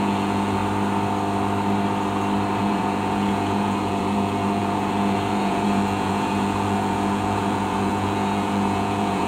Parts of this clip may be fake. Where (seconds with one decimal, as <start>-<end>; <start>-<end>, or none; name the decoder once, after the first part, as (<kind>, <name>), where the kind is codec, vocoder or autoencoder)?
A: 0.0-0.6 (vocoder, Vocos); 2.6-9.3